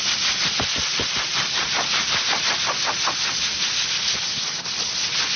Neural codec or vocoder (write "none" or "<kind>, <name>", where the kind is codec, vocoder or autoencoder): none